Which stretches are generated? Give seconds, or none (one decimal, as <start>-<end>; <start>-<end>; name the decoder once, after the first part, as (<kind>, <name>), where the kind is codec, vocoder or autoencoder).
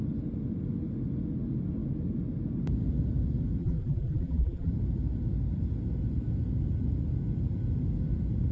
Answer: 3.6-4.7 (vocoder, BigVGAN v2)